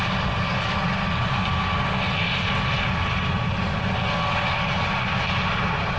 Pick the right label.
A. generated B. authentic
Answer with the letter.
B